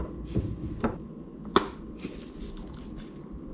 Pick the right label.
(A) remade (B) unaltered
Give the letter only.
B